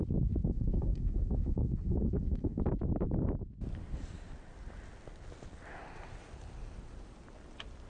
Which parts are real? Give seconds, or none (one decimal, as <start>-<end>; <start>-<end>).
0.0-0.4; 2.6-7.9